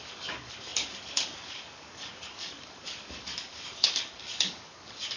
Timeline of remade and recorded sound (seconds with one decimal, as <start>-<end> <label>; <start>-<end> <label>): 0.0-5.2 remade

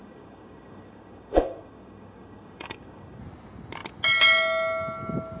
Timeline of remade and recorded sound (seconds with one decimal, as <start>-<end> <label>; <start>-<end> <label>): 0.0-3.2 remade; 3.2-5.4 recorded

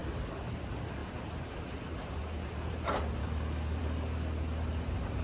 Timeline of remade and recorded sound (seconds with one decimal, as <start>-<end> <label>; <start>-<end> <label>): 0.0-3.2 recorded; 3.2-3.8 remade; 3.8-5.2 recorded

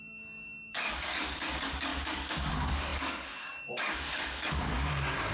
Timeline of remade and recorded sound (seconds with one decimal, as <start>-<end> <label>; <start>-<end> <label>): 0.0-5.3 remade